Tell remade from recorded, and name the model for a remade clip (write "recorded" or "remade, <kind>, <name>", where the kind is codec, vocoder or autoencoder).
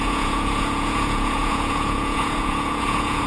remade, vocoder, Vocos